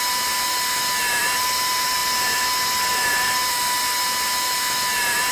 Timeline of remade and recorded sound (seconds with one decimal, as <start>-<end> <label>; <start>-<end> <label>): 0.0-5.3 recorded